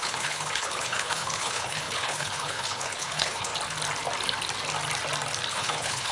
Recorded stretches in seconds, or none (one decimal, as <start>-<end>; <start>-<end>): 3.5-5.5